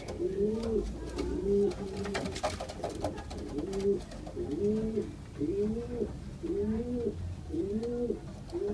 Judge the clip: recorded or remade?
recorded